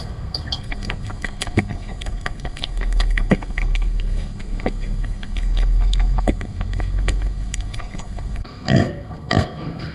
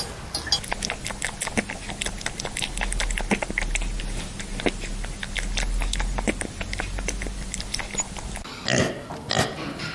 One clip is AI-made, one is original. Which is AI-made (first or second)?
first